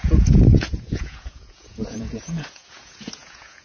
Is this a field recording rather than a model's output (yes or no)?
no